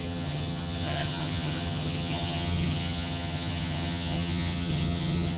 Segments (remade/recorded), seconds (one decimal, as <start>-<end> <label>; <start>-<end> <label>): 0.0-5.4 remade